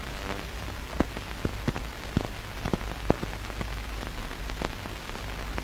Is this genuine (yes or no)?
yes